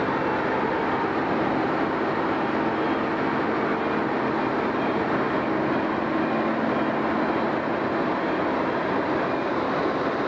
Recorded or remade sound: recorded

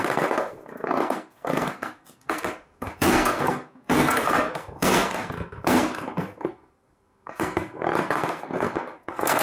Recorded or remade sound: remade